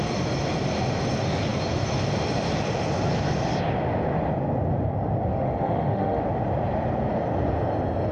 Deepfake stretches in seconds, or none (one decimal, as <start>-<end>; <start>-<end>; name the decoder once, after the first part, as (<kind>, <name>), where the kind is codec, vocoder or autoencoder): 5.3-6.2 (autoencoder, DAC-VAE)